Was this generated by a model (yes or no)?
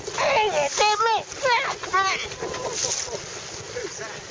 no